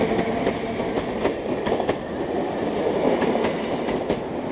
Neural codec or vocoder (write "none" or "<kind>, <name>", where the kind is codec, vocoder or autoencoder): none